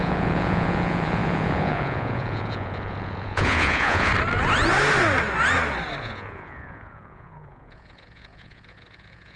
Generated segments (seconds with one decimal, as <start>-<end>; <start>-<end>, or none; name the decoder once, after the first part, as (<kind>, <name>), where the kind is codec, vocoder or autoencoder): 0.0-4.1 (vocoder, Vocos); 6.0-9.4